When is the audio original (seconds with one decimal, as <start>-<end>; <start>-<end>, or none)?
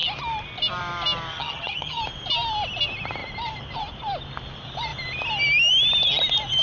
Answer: 0.0-1.3; 2.0-6.6